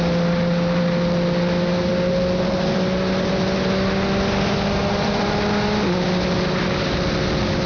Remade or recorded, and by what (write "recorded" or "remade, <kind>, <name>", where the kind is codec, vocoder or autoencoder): recorded